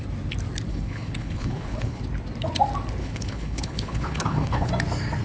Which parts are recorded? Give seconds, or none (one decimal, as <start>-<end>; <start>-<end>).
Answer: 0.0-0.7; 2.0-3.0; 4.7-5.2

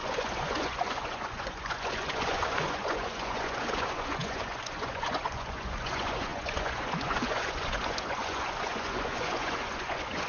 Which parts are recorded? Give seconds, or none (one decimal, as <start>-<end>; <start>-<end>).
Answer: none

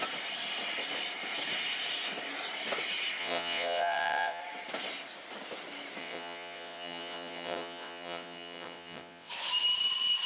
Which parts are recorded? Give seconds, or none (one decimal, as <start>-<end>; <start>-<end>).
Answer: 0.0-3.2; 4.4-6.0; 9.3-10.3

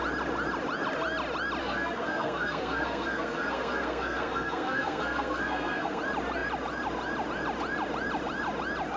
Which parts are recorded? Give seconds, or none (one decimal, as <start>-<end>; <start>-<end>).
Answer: 0.0-1.6; 6.0-9.0

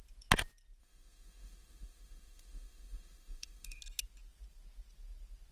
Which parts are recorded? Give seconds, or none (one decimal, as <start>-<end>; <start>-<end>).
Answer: 0.0-0.8; 3.8-5.5

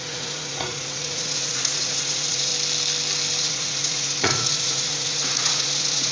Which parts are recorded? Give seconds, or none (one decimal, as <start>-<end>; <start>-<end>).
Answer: 2.5-3.4